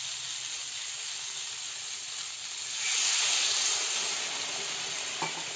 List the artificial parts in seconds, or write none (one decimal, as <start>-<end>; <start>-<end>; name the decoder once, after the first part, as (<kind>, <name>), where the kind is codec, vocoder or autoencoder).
none